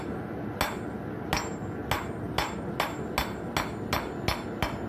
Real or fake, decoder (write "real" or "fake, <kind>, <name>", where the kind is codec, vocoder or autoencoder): real